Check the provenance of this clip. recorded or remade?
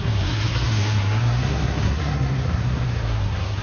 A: remade